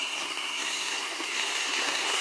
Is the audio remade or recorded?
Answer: remade